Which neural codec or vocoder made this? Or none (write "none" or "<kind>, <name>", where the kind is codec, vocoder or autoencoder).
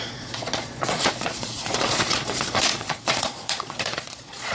vocoder, Vocos